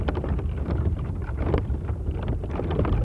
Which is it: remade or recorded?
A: remade